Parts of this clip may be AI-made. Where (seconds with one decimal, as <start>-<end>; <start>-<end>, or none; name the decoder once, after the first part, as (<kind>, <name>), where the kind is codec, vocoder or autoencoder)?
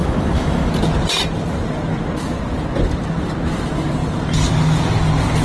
0.0-0.7 (autoencoder, DAC-VAE)